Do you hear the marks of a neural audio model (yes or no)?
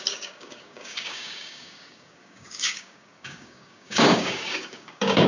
yes